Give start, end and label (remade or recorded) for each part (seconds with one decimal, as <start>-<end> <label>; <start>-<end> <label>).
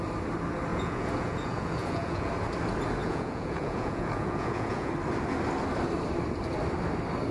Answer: 0.0-0.7 recorded; 0.7-2.3 remade; 2.3-3.0 recorded; 3.0-4.9 remade; 4.9-7.3 recorded